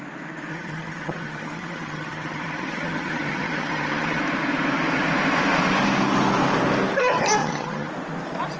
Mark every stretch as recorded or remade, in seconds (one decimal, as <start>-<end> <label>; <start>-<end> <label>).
0.0-0.5 recorded; 0.5-4.2 remade; 4.2-7.4 recorded; 7.4-7.9 remade; 7.9-8.6 recorded